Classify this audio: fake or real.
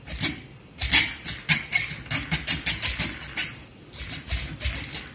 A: real